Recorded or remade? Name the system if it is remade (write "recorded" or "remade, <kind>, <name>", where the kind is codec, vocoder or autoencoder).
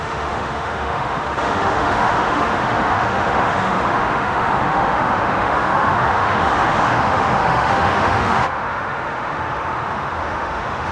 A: remade, autoencoder, DAC-VAE